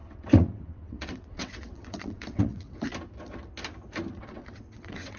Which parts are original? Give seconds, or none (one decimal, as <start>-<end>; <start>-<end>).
2.9-4.1